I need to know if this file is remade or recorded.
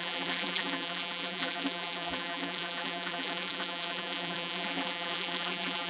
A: remade